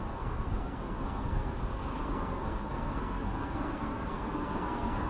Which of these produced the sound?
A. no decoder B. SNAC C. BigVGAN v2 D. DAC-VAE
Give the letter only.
B